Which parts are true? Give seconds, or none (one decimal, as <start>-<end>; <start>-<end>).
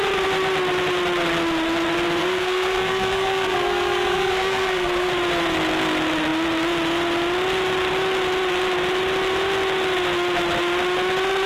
0.0-2.2; 5.1-11.5